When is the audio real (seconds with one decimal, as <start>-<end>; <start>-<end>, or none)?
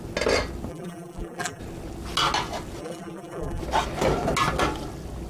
0.0-0.7; 1.6-2.8; 3.6-5.3